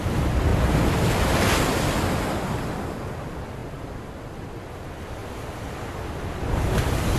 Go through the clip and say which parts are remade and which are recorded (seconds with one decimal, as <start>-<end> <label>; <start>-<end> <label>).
0.0-0.5 remade; 0.5-2.6 recorded; 2.6-5.2 remade; 5.2-6.1 recorded; 6.1-7.2 remade